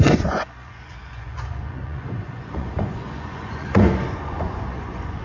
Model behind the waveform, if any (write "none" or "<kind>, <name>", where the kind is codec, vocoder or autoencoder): vocoder, Vocos